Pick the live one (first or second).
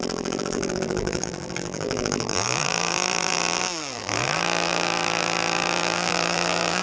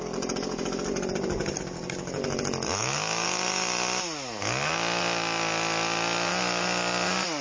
second